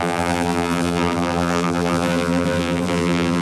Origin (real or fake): fake